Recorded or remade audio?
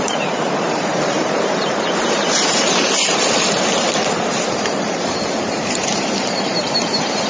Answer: remade